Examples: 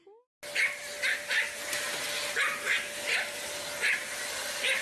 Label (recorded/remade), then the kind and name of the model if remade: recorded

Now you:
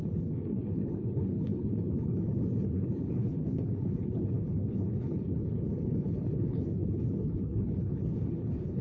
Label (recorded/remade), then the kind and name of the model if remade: remade, codec, HILCodec